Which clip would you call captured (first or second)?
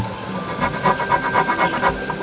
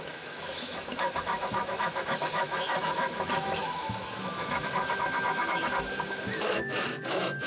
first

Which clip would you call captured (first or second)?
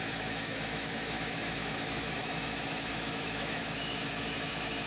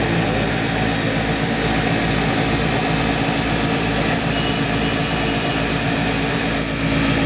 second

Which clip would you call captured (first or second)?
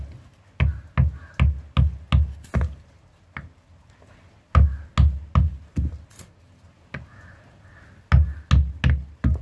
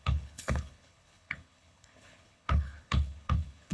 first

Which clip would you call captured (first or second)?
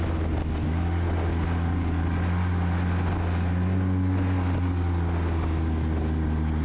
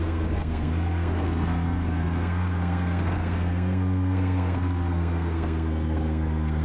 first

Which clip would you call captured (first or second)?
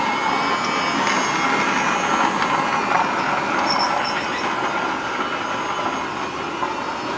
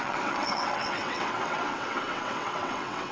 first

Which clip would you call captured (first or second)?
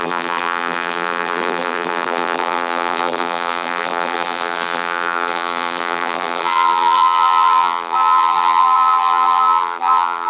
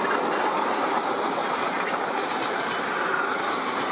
second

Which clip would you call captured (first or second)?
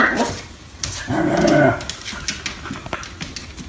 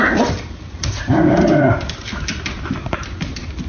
first